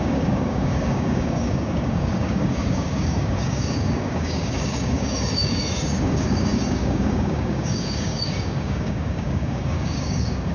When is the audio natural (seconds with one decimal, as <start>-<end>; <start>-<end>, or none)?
none